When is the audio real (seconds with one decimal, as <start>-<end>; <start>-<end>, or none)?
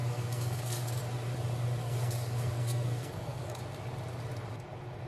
1.0-1.8; 3.6-5.1